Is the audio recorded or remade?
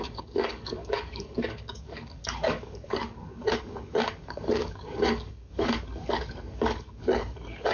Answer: remade